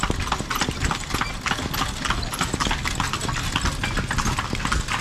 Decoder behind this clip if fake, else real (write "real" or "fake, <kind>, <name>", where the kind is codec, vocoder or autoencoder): real